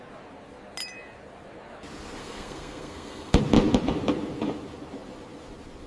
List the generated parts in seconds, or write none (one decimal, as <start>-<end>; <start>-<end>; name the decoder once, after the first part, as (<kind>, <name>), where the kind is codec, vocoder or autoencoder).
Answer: 2.2-3.4 (codec, SNAC)